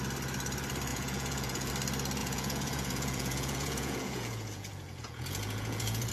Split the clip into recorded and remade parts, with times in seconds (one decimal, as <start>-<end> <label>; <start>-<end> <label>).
0.0-0.9 recorded; 0.9-1.7 remade; 1.7-2.2 recorded; 2.2-6.1 remade